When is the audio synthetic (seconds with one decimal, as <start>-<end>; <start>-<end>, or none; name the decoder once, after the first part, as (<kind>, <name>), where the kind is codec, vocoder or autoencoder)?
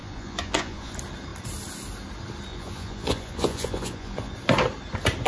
0.0-0.9 (vocoder, Vocos); 2.5-4.3